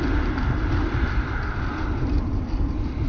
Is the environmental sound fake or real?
real